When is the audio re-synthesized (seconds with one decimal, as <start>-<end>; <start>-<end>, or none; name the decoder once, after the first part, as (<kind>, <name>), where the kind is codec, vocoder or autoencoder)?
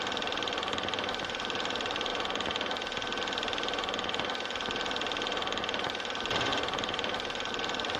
0.0-2.1 (vocoder, BigVGAN v2); 5.6-8.0